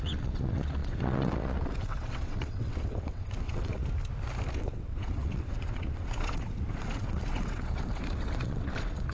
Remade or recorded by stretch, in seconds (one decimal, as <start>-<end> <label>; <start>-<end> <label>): 0.0-3.8 remade; 3.8-4.6 recorded; 4.6-9.1 remade